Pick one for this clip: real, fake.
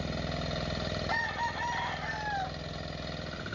real